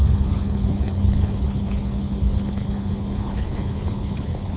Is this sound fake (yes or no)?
yes